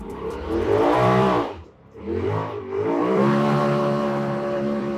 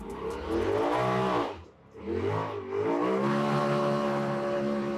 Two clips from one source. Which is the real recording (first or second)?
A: second